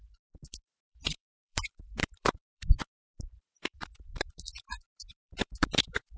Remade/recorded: remade